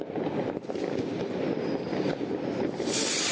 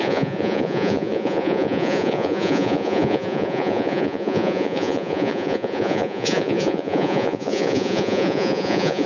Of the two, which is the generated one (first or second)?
second